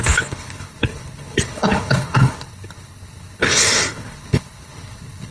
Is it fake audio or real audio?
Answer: fake